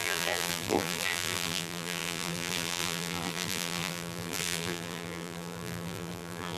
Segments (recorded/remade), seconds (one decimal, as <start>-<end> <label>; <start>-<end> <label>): 0.0-6.6 remade